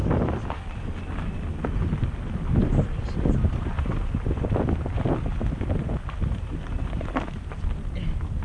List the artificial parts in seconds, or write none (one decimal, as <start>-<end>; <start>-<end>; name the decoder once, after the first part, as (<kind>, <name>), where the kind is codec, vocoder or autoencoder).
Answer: none